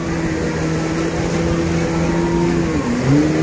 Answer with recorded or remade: recorded